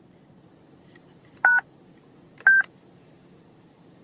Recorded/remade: recorded